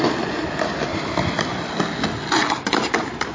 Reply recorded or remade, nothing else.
recorded